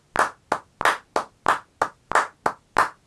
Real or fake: real